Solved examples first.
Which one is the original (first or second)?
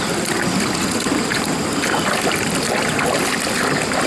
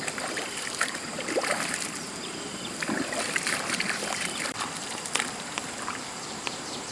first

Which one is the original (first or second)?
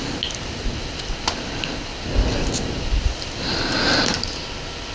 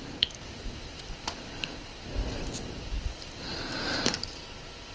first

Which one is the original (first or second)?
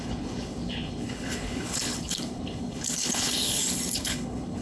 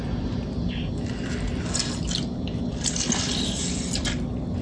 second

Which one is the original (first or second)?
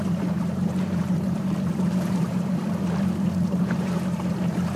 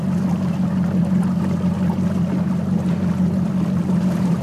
second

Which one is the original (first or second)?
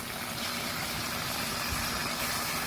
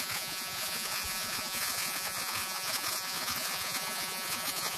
first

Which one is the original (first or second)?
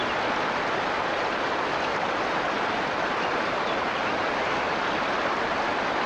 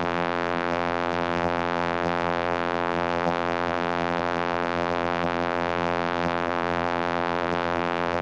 first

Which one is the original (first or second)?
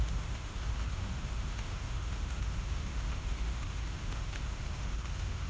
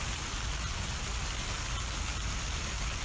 second